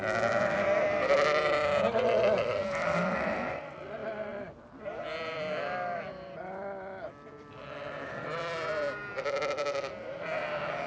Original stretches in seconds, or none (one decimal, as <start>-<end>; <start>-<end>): 9.0-9.5